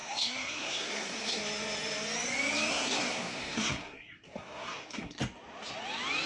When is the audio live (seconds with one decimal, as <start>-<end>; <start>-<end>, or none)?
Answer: 1.4-2.7; 5.2-6.3